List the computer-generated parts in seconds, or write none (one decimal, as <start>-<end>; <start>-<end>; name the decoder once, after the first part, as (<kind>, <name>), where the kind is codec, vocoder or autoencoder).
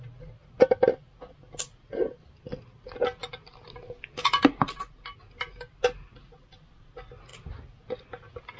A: none